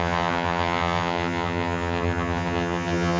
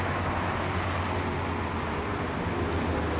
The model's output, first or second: first